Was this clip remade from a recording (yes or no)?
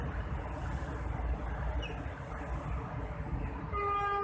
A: no